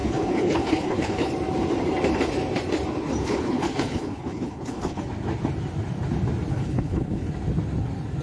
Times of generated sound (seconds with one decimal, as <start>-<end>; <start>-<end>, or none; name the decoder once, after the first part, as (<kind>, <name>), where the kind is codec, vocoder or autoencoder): 0.0-1.3 (codec, HILCodec); 3.2-5.0; 6.5-7.3